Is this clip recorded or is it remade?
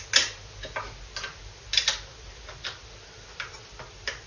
recorded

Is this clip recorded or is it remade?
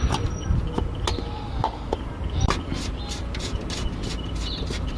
recorded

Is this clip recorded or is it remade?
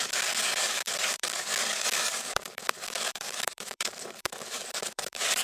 remade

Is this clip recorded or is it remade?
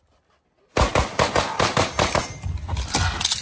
recorded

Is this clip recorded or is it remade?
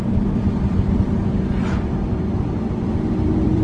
remade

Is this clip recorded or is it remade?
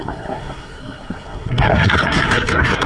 remade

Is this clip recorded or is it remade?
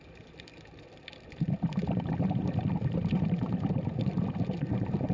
recorded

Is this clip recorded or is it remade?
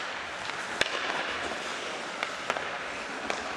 recorded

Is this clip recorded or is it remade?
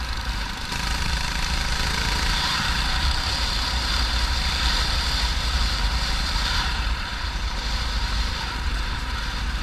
remade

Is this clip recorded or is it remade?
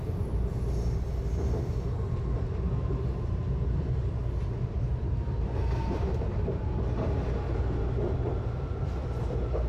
recorded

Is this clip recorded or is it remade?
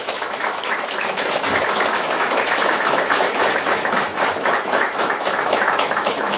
remade